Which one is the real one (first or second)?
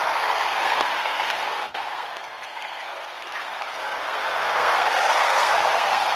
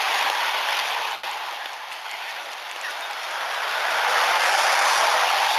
second